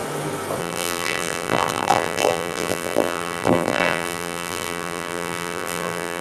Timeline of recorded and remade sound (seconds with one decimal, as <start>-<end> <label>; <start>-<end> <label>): 0.0-0.6 recorded; 0.6-6.2 remade